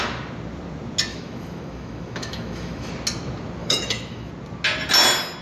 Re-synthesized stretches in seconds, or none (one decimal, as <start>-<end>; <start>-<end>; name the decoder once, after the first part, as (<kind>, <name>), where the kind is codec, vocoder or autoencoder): 1.1-2.9 (autoencoder, DAC-VAE); 3.6-4.3